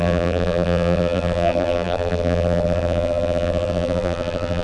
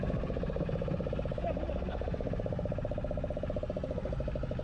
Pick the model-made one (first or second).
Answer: first